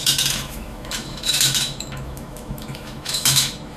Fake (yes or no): yes